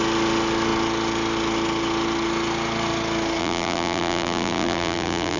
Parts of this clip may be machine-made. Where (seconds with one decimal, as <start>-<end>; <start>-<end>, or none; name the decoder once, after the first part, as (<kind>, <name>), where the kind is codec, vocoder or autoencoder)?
3.4-5.4 (vocoder, BigVGAN v2)